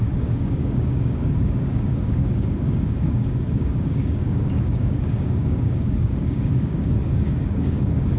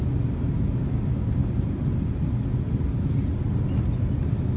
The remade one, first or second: first